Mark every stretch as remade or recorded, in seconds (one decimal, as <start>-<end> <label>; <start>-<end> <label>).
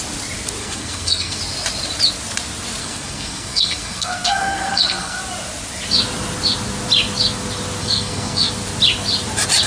0.0-0.6 recorded; 0.6-1.4 remade; 1.4-2.8 recorded; 2.8-5.2 remade; 5.2-7.8 recorded; 7.8-8.5 remade; 8.5-9.7 recorded